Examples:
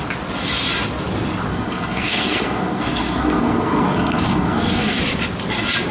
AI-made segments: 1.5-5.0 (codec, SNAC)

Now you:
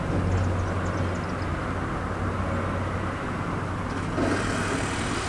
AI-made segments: none

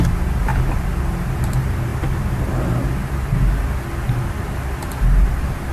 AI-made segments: none